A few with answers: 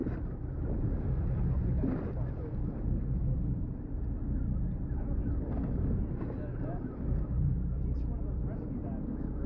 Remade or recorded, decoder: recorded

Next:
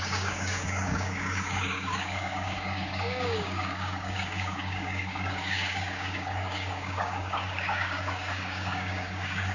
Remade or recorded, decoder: remade, codec, DAC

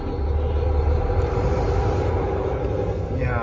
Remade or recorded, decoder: recorded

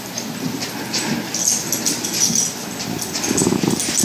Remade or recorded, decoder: recorded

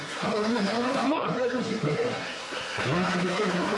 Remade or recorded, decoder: remade, codec, SNAC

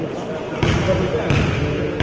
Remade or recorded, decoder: recorded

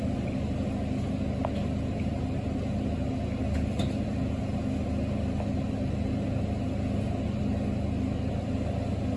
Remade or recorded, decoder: recorded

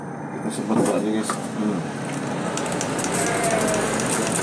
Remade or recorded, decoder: recorded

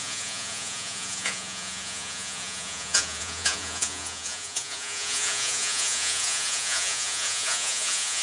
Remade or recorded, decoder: remade, vocoder, Vocos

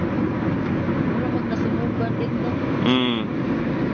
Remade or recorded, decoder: recorded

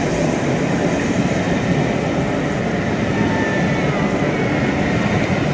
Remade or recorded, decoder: recorded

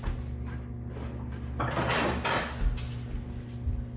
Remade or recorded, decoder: recorded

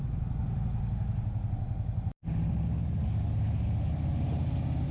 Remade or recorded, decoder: recorded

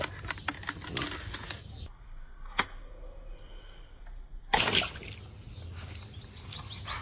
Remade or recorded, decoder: recorded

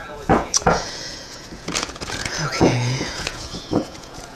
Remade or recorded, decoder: remade, vocoder, Vocos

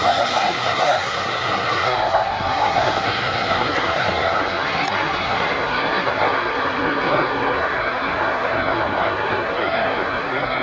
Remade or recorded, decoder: remade, codec, SNAC